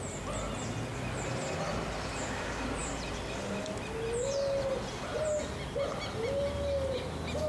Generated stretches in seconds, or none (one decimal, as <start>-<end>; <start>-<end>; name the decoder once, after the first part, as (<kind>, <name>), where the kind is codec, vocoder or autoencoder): none